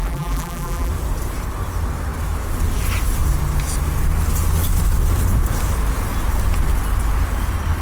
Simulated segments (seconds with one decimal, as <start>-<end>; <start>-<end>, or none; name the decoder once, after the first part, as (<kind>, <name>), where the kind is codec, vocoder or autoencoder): 0.0-0.9 (vocoder, BigVGAN v2)